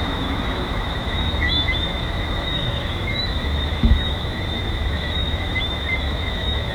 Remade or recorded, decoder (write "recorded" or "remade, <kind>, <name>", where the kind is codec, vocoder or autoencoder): remade, autoencoder, DAC-VAE